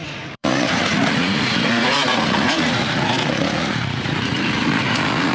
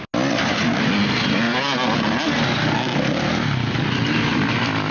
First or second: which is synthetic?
first